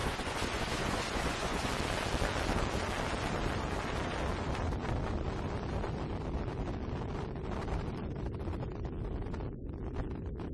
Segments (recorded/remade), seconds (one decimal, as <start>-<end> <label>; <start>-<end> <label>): 0.0-1.7 remade; 1.7-10.5 recorded